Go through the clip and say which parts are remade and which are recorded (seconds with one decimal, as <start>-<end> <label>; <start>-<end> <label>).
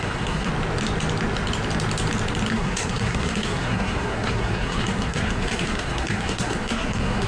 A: 0.0-0.5 remade; 0.5-2.5 recorded; 2.5-7.3 remade